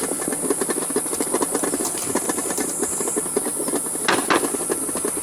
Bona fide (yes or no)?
yes